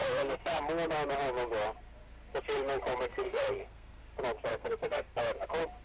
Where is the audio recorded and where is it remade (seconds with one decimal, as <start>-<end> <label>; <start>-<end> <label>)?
0.0-0.6 remade; 0.6-3.1 recorded; 3.1-4.0 remade; 4.0-4.5 recorded; 4.5-5.2 remade; 5.2-5.8 recorded